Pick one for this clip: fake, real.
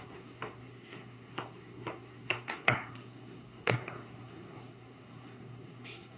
fake